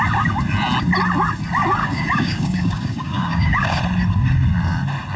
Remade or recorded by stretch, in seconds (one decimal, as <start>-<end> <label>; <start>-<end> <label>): 0.0-1.8 recorded; 1.8-3.8 remade; 3.8-5.2 recorded